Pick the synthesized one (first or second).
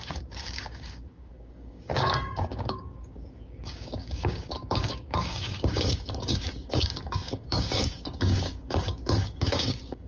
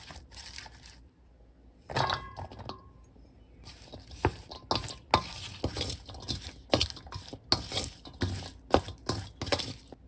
first